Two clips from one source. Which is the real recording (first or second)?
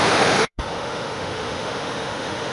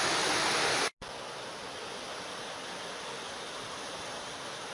second